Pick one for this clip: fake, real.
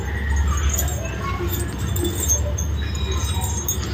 real